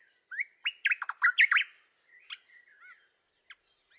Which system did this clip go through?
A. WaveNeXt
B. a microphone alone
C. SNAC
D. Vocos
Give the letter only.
B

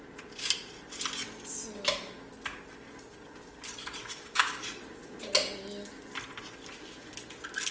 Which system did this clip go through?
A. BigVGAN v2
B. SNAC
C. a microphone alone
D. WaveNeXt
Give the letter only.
C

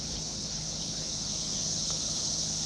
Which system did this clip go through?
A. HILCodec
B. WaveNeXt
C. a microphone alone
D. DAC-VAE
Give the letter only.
A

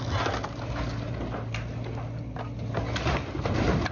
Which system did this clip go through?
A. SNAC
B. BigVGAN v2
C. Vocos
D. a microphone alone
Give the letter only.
D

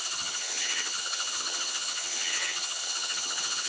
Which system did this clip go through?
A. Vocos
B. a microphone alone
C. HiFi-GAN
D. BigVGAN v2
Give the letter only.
C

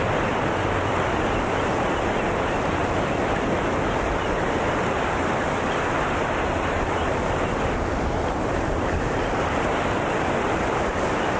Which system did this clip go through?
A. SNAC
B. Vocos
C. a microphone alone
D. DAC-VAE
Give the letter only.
C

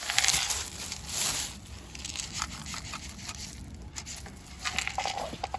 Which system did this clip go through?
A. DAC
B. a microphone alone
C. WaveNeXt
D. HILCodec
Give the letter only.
B